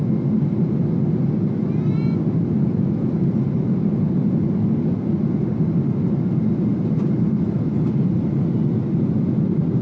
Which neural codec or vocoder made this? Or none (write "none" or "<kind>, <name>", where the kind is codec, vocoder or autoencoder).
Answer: none